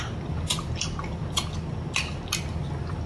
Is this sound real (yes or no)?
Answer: yes